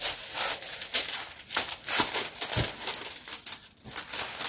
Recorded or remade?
recorded